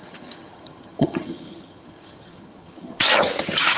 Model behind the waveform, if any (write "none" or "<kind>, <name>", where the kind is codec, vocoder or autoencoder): vocoder, HiFi-GAN